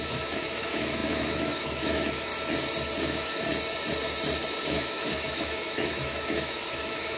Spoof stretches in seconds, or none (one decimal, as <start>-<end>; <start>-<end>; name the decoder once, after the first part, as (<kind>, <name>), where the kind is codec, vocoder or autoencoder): 0.0-2.3 (autoencoder, DAC-VAE); 3.0-3.5; 4.6-7.2